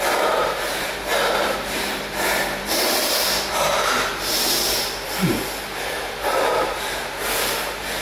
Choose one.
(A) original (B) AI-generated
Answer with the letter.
B